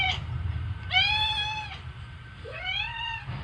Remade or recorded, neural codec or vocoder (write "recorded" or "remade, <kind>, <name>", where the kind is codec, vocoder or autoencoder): remade, vocoder, BigVGAN v2